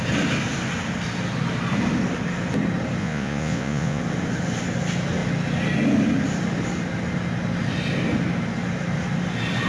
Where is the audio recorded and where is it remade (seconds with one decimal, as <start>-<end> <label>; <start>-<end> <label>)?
0.0-3.0 recorded; 3.0-4.0 remade; 4.0-9.7 recorded